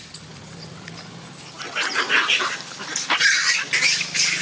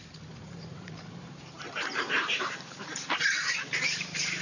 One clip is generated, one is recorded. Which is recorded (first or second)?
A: first